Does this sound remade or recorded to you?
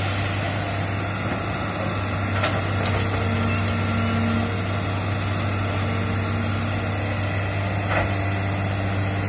recorded